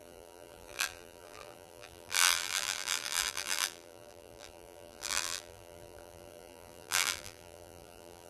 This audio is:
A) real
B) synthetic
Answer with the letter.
B